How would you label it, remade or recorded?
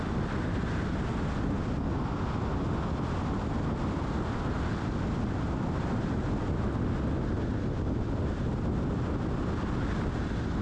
recorded